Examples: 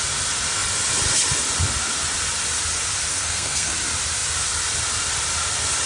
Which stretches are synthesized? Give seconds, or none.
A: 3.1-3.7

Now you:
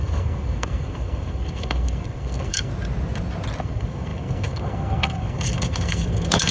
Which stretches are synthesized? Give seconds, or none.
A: 0.0-2.7; 3.6-6.5

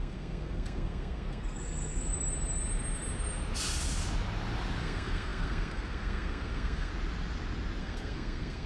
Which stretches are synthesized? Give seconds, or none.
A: 0.0-2.1; 4.8-6.9; 7.8-8.7

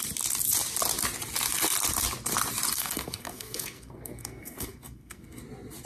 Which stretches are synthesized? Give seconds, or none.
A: 2.7-5.4